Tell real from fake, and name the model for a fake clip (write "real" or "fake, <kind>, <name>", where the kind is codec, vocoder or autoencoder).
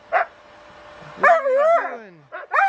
real